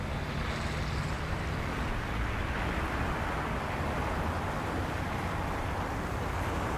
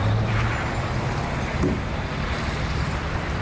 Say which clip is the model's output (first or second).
second